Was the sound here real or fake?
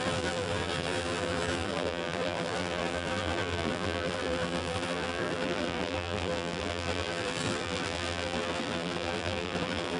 fake